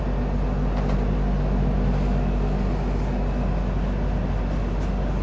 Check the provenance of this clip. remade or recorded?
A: recorded